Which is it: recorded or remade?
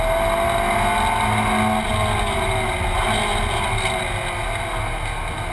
recorded